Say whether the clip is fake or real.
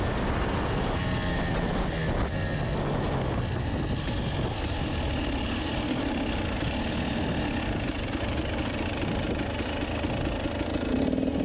real